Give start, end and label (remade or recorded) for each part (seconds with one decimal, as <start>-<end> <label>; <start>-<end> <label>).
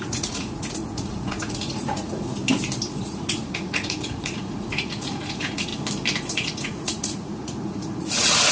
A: 0.0-2.4 remade; 2.4-2.9 recorded; 2.9-5.7 remade; 5.7-6.3 recorded; 6.3-8.5 remade